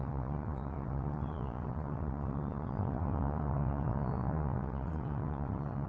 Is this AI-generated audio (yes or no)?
yes